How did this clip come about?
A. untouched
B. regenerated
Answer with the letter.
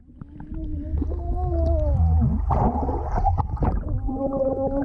A